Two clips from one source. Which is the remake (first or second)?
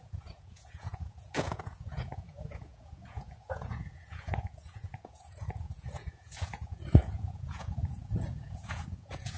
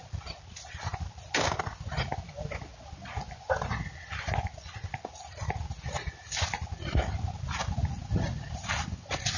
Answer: first